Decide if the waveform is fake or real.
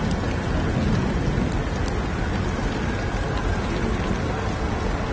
real